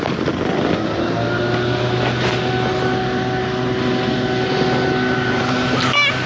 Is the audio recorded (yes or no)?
yes